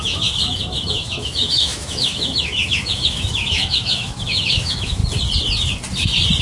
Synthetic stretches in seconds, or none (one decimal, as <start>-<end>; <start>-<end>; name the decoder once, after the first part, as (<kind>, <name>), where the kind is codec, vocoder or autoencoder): 0.0-5.0 (autoencoder, DAC-VAE)